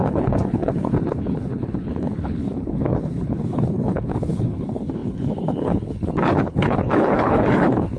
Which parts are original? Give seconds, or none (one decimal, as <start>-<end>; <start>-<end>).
none